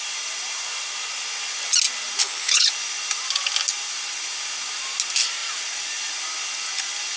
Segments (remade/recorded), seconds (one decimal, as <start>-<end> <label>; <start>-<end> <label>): 0.0-2.2 recorded; 2.2-2.7 remade; 2.7-7.2 recorded

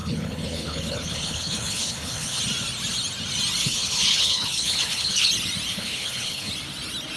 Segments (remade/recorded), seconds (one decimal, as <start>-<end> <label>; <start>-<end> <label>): 0.0-2.4 remade; 2.4-3.6 recorded; 3.6-5.3 remade; 5.3-5.7 recorded; 5.7-6.5 remade; 6.5-7.2 recorded

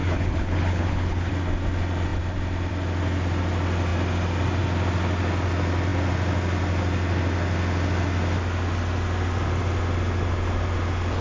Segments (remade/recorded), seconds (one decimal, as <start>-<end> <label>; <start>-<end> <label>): 0.0-1.3 remade; 1.3-11.2 recorded

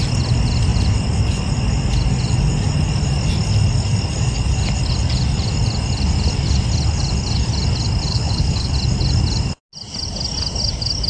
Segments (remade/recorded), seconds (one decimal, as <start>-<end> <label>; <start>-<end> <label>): 0.0-8.1 recorded; 8.1-8.7 remade; 8.7-11.1 recorded

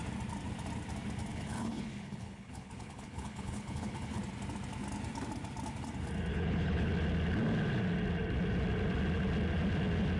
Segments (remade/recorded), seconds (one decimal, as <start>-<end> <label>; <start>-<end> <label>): 0.0-1.3 recorded; 1.3-4.2 remade; 4.2-6.3 recorded; 6.3-6.9 remade; 6.9-10.2 recorded